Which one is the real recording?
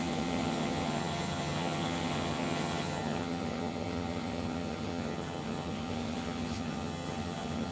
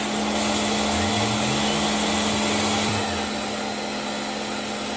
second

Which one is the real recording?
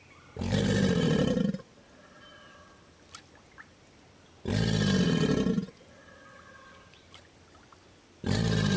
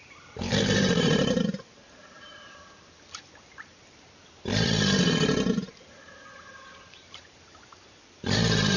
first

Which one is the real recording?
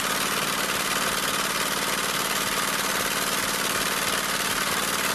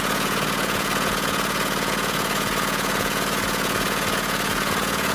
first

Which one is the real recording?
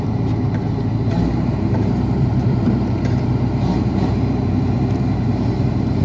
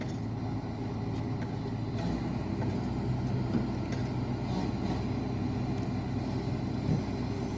second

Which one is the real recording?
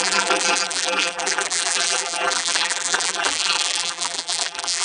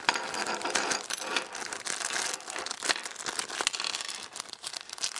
second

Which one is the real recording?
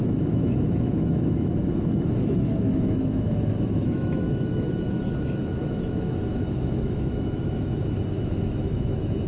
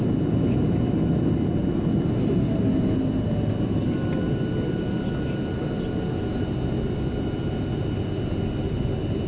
second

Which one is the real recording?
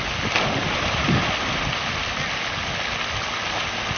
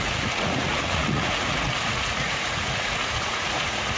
first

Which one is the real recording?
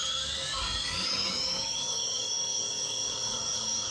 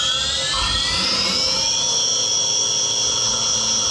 second